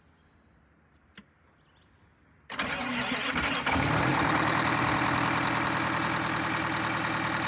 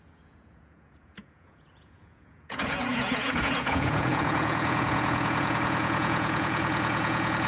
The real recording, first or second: first